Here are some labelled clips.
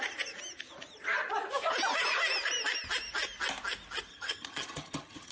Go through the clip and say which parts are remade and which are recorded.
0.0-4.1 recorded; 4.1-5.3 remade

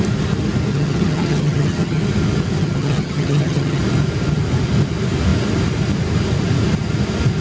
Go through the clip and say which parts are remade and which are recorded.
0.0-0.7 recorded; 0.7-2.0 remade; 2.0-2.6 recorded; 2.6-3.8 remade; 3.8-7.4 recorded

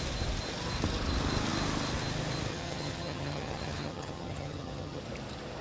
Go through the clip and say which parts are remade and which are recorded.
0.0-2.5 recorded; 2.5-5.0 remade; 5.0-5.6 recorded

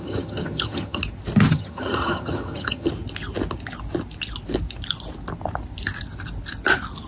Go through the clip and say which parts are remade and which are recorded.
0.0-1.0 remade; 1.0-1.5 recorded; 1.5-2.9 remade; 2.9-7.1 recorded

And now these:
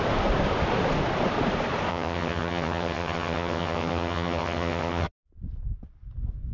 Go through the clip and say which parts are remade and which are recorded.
0.0-1.9 recorded; 1.9-5.1 remade; 5.1-6.5 recorded

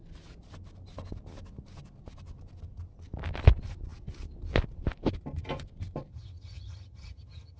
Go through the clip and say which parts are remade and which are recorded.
0.0-6.1 recorded; 6.1-7.6 remade

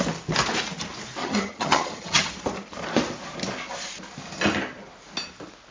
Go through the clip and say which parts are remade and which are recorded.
0.0-1.2 recorded; 1.2-2.3 remade; 2.3-5.7 recorded